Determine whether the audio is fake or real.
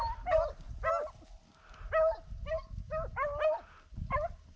real